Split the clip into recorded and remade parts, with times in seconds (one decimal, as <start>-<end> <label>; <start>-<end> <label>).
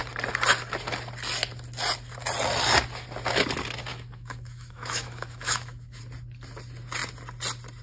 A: 0.0-3.9 recorded; 3.9-6.0 remade; 6.0-7.8 recorded